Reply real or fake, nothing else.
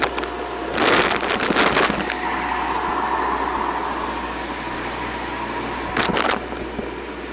real